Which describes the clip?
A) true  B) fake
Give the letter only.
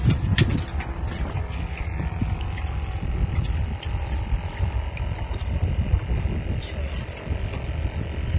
A